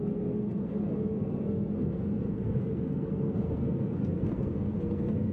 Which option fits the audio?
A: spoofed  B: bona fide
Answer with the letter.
A